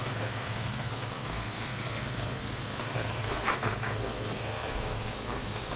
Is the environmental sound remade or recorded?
remade